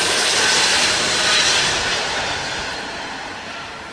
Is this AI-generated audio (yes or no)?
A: yes